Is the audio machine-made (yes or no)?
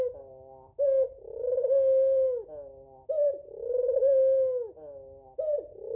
no